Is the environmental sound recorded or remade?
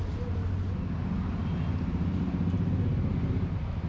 recorded